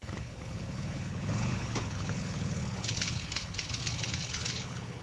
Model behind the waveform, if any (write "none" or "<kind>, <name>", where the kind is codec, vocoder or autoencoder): codec, HILCodec